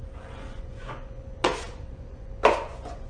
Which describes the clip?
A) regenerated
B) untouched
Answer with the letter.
A